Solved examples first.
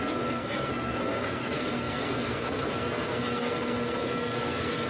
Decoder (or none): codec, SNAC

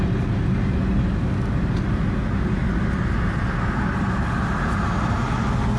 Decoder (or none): none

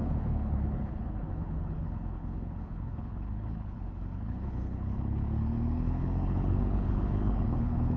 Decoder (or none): codec, HILCodec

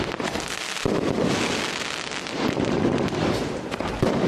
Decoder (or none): none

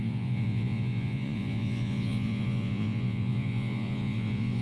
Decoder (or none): vocoder, Vocos